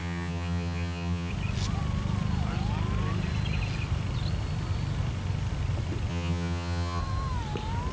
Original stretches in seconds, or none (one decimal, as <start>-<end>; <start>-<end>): 1.3-6.1; 7.0-7.9

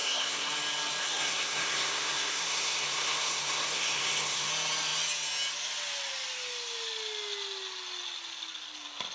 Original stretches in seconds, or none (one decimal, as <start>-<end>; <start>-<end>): 0.5-1.0; 4.5-9.1

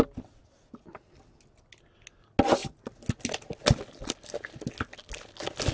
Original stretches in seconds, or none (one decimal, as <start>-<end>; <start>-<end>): 0.0-5.7

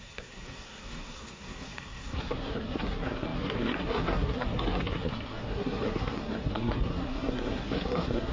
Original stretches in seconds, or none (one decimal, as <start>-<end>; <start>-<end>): none